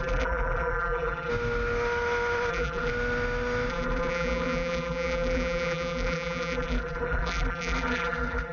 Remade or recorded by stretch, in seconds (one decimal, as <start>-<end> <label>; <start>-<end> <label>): 0.0-1.3 remade; 1.3-2.5 recorded; 2.5-2.9 remade; 2.9-3.7 recorded; 3.7-8.5 remade

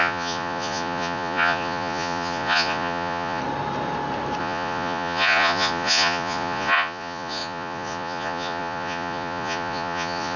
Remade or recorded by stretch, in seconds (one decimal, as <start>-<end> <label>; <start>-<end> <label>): 0.0-3.4 remade; 3.4-4.4 recorded; 4.4-10.4 remade

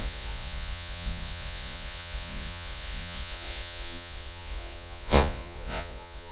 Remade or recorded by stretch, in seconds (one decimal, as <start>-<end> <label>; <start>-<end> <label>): 0.0-6.3 remade

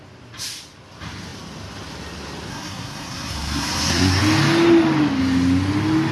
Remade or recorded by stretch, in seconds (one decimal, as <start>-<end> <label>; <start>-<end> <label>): 0.0-2.5 recorded; 2.5-4.2 remade; 4.2-6.1 recorded